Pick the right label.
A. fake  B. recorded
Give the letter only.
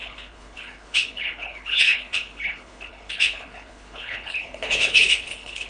A